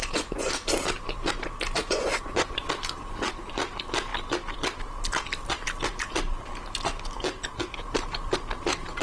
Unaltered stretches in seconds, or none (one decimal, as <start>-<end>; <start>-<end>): 0.5-1.8; 2.5-9.0